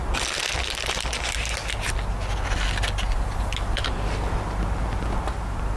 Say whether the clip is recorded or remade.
recorded